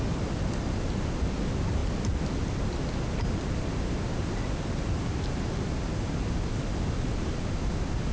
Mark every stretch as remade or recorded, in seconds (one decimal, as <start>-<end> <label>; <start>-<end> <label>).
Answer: 0.0-8.1 recorded